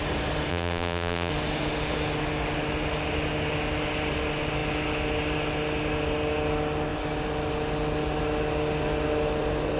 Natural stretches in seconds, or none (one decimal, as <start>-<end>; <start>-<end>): 0.0-0.5; 1.3-9.8